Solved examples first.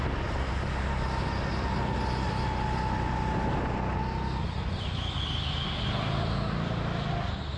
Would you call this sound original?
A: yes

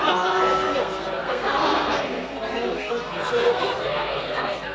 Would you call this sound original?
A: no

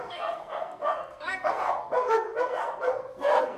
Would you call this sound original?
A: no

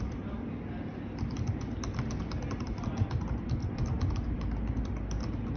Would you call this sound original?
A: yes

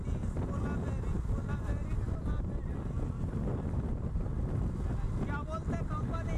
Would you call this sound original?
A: yes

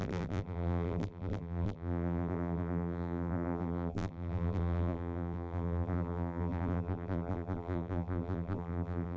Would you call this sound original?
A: no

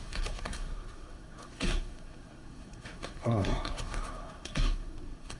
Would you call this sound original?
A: no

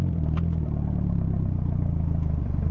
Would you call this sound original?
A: no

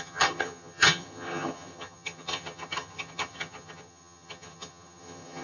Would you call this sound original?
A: no